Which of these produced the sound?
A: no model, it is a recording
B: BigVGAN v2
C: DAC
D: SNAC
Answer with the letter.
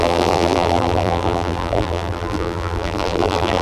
B